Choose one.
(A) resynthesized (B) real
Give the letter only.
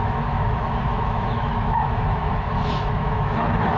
A